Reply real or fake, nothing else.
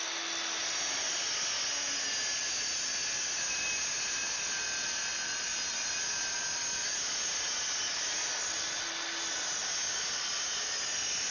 real